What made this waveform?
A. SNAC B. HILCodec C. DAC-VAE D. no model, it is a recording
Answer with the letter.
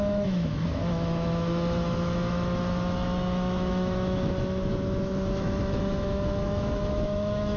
C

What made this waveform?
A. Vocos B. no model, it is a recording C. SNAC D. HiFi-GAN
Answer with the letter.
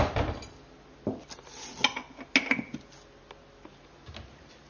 B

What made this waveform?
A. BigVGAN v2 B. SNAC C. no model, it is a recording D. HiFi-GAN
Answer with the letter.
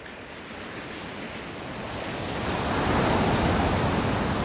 C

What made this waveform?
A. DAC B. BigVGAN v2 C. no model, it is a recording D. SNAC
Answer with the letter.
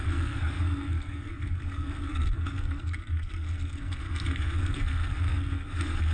D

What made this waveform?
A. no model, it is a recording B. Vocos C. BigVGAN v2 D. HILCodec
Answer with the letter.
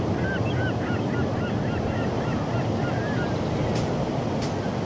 A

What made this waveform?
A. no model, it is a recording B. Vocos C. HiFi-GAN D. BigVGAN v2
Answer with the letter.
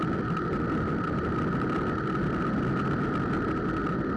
A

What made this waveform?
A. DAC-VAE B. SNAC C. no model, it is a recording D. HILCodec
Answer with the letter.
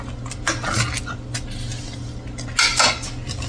C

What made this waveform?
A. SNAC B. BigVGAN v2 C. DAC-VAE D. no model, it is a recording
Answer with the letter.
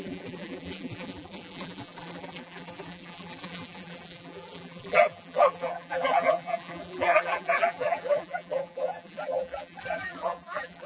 B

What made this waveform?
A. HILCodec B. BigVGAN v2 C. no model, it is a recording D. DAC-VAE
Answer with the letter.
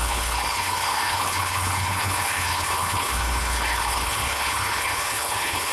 A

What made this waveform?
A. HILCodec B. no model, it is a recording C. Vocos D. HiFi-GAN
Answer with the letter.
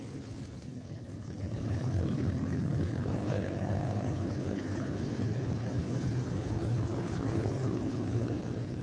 A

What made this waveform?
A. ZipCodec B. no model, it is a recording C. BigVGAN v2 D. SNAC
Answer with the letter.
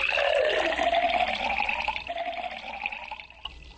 C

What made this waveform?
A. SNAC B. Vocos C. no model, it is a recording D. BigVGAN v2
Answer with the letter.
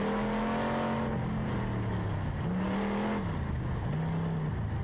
C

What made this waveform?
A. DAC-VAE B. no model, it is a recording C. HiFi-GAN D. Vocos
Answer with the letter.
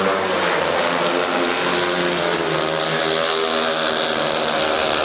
B